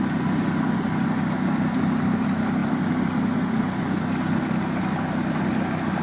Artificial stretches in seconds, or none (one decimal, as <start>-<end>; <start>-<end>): none